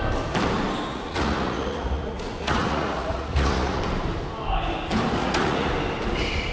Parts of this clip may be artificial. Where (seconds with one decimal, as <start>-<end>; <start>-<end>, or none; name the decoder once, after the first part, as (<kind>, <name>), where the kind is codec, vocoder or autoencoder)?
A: 0.9-3.8 (vocoder, Vocos); 5.2-5.7